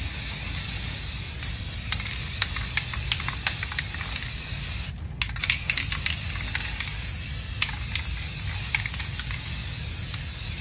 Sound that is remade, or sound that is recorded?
recorded